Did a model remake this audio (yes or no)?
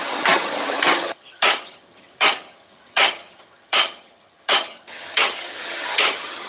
yes